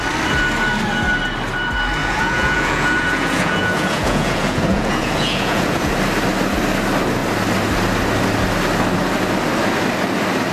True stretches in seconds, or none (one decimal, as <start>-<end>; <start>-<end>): 0.0-2.0; 5.9-10.5